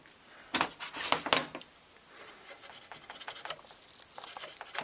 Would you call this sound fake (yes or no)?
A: no